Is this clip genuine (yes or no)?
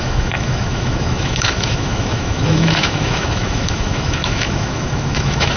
no